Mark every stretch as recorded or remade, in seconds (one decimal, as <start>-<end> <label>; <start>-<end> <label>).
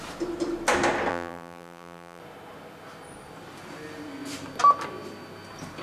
0.0-1.1 recorded; 1.1-2.2 remade; 2.2-5.8 recorded